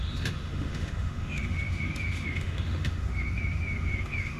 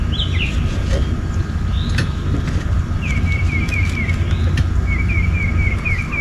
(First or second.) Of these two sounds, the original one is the second